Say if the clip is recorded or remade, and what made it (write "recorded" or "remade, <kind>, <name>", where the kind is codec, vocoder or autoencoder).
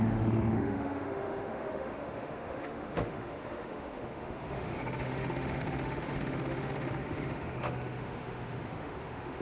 remade, autoencoder, DAC-VAE